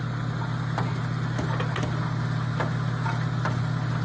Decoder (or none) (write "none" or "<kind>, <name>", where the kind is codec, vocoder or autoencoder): none